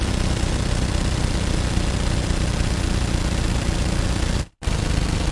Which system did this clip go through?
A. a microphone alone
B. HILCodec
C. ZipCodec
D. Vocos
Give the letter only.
A